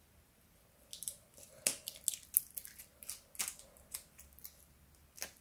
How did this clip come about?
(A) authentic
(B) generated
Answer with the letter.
A